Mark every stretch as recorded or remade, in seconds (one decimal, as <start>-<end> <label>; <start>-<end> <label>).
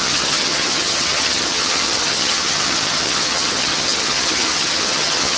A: 0.0-5.4 remade